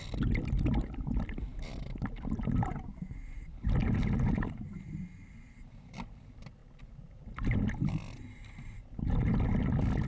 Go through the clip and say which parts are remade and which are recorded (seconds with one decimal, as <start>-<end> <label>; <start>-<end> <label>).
0.0-10.1 recorded